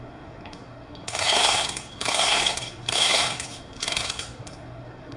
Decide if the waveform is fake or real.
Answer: fake